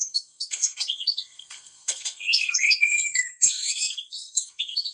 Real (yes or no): no